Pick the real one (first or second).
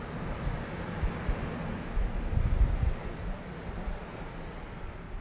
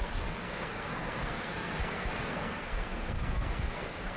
first